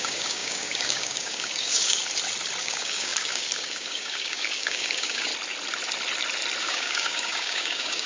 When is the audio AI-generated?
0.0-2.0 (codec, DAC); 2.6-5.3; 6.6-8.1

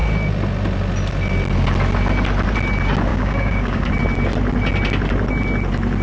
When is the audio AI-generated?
3.1-3.9 (codec, DAC)

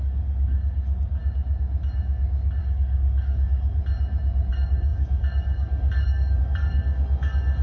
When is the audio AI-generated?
0.0-1.2 (codec, DAC); 2.6-3.8; 4.5-7.6

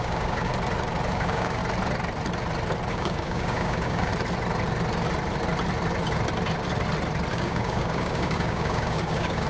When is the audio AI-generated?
0.0-0.5 (codec, DAC); 1.1-1.6; 2.9-4.1; 7.3-9.5

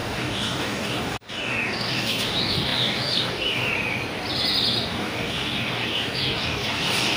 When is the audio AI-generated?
0.0-3.7 (codec, DAC); 4.9-7.2